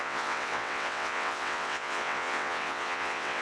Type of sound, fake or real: fake